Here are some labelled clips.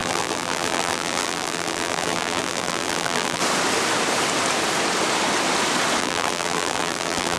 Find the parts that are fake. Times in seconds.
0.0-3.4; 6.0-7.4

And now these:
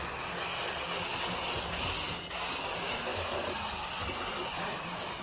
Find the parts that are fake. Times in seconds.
none

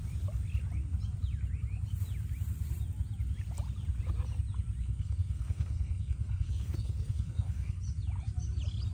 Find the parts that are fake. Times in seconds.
4.8-7.8